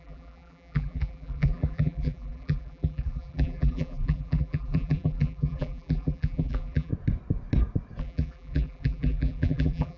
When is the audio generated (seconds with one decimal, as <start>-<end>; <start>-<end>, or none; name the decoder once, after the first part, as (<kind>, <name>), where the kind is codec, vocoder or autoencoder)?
0.0-6.9 (vocoder, BigVGAN v2); 8.0-10.0